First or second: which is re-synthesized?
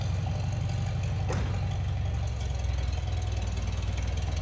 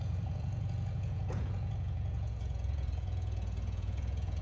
second